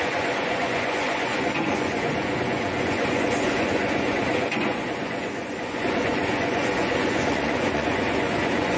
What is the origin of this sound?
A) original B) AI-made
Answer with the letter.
B